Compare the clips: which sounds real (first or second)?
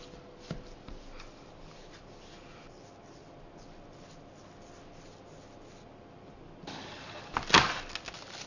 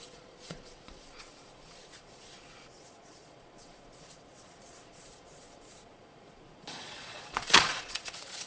first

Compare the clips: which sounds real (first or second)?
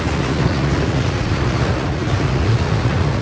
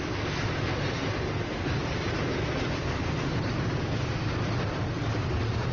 second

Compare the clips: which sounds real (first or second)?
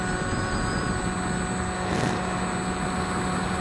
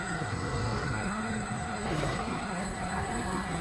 first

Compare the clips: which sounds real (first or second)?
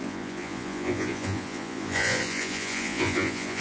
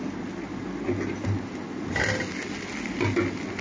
second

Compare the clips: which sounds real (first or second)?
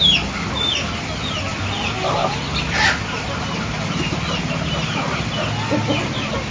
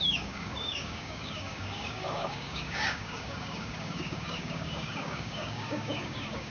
first